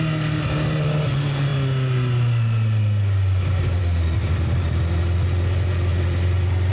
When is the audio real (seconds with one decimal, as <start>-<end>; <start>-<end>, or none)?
0.0-6.7